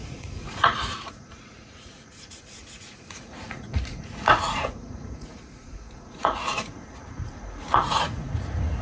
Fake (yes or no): yes